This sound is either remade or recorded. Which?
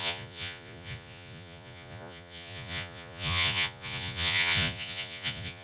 remade